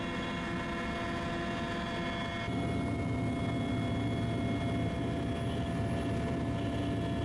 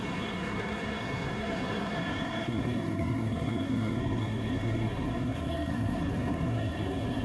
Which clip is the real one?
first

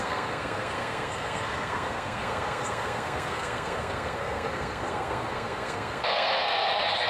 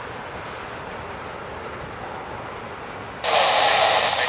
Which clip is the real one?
second